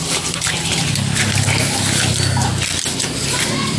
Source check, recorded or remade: remade